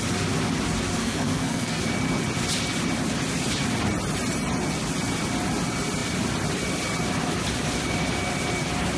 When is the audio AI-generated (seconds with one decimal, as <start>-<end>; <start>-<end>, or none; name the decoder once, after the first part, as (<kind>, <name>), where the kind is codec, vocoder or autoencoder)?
1.0-1.8 (codec, SNAC)